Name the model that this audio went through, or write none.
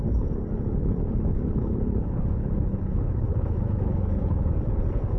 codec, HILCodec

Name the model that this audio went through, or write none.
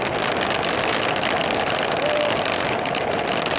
none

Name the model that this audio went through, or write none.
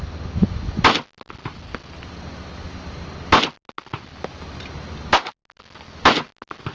none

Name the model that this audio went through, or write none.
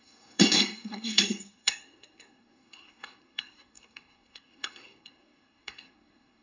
codec, SNAC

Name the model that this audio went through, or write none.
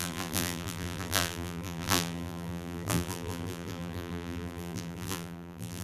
vocoder, BigVGAN v2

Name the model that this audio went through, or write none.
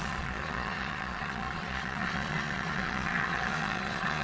vocoder, Vocos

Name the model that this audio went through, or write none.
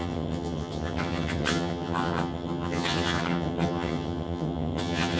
vocoder, HiFi-GAN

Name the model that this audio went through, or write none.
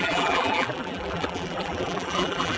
vocoder, BigVGAN v2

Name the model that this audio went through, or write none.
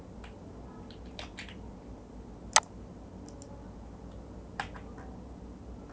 none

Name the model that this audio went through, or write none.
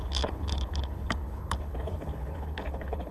codec, HILCodec